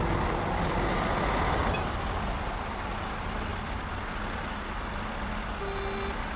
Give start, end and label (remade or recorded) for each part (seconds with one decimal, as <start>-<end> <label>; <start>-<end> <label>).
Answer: 0.0-1.6 recorded; 1.6-2.9 remade; 2.9-3.5 recorded; 3.5-4.5 remade; 4.5-6.4 recorded